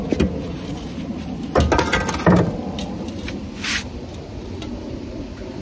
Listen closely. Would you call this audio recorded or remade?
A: recorded